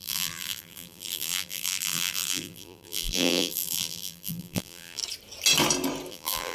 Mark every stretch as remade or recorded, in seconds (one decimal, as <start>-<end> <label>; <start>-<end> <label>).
0.0-5.0 remade; 5.0-6.1 recorded; 6.1-6.5 remade